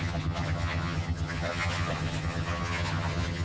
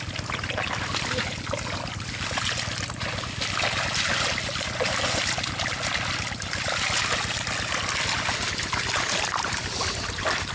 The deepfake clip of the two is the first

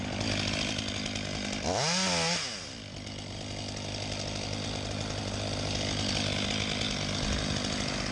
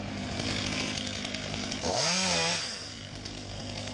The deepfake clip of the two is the second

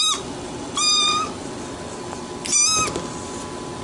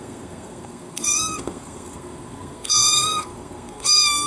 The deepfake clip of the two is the second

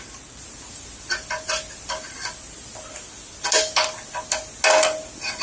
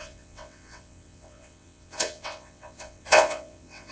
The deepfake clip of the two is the second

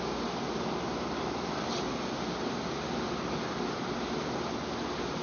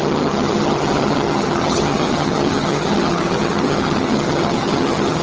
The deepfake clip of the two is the second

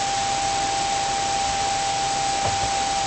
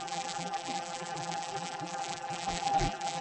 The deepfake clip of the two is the second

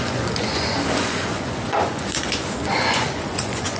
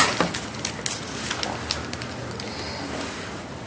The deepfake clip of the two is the first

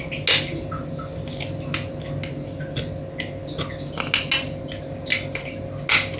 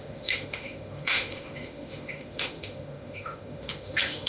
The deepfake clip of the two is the second